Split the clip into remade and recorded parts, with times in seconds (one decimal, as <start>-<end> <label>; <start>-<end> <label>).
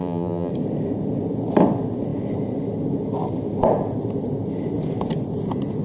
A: 0.0-0.5 remade; 0.5-5.8 recorded